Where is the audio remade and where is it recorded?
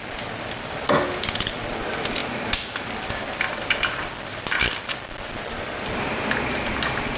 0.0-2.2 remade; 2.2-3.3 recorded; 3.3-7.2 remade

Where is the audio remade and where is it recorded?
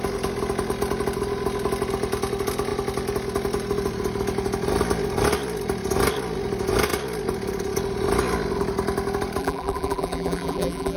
0.0-9.4 recorded; 9.4-11.0 remade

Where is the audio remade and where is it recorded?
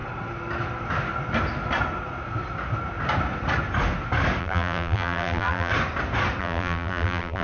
0.0-4.4 recorded; 4.4-5.7 remade; 5.7-6.4 recorded; 6.4-7.4 remade